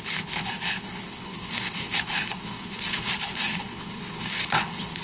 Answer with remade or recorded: remade